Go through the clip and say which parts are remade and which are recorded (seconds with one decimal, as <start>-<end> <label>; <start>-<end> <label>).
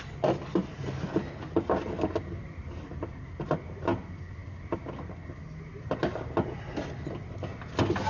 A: 0.0-8.1 recorded